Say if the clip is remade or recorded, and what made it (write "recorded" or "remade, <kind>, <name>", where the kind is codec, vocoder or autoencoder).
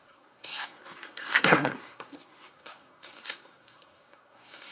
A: remade, codec, SNAC